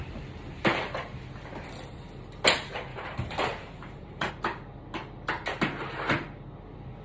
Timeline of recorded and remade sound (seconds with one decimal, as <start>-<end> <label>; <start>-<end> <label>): 0.0-2.9 recorded; 2.9-4.3 remade; 4.3-7.0 recorded